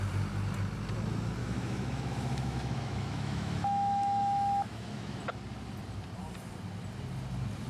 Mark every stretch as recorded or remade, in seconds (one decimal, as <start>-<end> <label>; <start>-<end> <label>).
0.0-1.4 recorded; 1.4-5.2 remade; 5.2-7.7 recorded